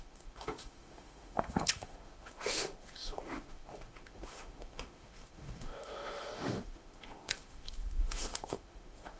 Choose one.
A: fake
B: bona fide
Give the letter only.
A